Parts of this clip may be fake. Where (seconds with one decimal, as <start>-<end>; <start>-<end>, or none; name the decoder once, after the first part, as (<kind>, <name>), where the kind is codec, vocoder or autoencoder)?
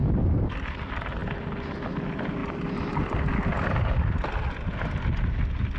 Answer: none